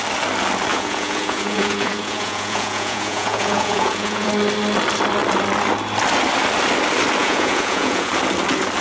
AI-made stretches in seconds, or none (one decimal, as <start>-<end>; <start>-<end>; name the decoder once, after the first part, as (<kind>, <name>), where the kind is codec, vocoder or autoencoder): 0.7-4.3 (vocoder, Vocos); 7.2-8.1